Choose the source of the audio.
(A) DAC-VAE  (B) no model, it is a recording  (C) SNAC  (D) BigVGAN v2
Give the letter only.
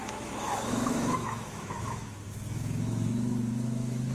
A